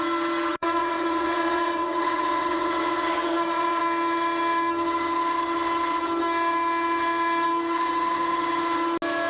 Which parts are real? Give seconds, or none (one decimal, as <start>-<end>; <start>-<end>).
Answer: 0.0-0.5; 3.8-9.3